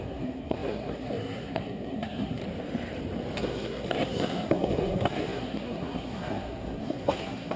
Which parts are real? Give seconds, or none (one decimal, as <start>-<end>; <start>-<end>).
2.4-3.4